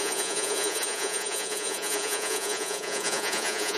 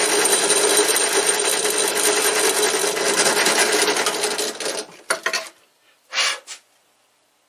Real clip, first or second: second